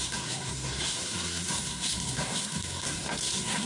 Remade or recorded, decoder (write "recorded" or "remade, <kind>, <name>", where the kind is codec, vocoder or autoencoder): remade, codec, SNAC